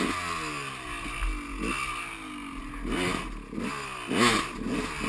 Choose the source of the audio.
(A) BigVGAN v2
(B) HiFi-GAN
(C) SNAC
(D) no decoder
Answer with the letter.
D